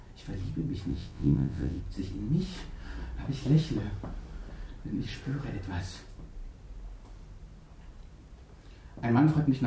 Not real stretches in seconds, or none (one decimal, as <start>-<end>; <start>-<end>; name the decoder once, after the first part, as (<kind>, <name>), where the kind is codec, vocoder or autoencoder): 0.9-1.8 (vocoder, WaveNeXt)